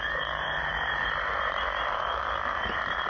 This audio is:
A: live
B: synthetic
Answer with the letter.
B